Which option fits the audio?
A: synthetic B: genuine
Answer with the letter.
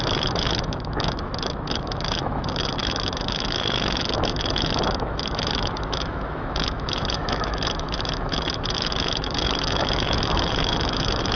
A